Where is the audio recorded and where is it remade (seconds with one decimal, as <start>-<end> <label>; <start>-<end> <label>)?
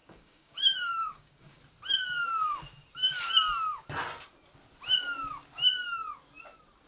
0.0-1.6 remade; 1.6-6.9 recorded